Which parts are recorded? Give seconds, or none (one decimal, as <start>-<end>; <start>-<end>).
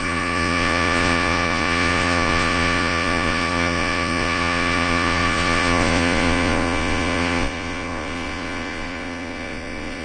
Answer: none